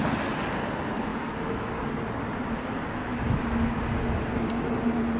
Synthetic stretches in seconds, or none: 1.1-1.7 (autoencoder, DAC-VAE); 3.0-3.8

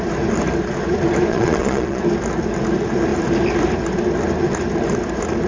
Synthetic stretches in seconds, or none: 1.3-2.0 (vocoder, Vocos)